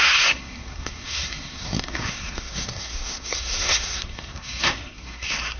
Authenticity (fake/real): fake